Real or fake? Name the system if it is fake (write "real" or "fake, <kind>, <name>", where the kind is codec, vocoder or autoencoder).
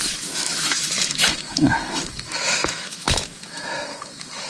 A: fake, autoencoder, DAC-VAE